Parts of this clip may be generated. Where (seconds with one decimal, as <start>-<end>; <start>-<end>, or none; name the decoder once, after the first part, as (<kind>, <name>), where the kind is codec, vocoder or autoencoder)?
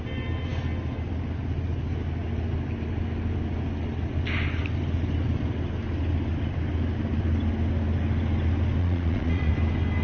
8.8-9.5 (vocoder, Vocos)